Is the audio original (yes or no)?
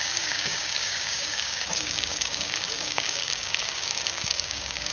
no